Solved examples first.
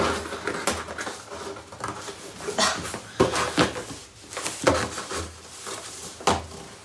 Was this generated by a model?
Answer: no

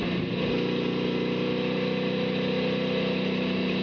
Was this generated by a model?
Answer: no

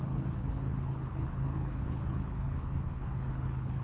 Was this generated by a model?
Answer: yes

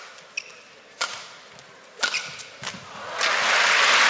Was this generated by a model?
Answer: no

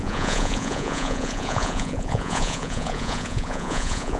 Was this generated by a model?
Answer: yes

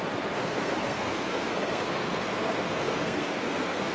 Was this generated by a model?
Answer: yes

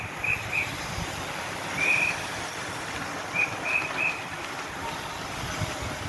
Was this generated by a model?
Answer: yes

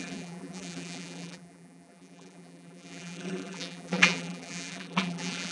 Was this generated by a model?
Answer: yes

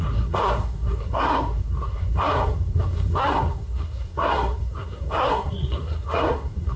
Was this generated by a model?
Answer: yes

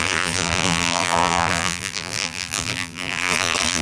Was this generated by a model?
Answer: yes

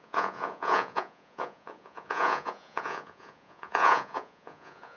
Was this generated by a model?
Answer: yes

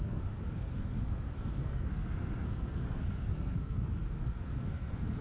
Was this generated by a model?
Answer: yes